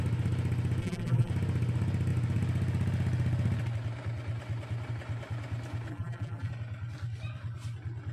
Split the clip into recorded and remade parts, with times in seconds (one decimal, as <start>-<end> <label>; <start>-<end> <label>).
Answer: 0.0-0.8 recorded; 0.8-1.3 remade; 1.3-5.9 recorded; 5.9-6.5 remade; 6.5-8.1 recorded